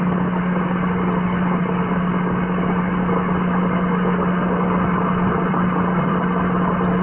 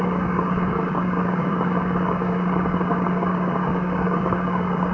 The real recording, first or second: first